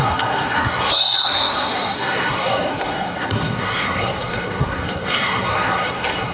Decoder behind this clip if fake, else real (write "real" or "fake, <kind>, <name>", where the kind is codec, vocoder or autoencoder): fake, codec, SNAC